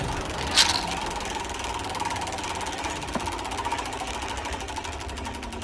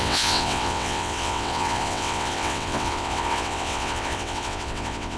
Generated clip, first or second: second